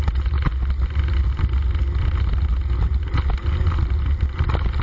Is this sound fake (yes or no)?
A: no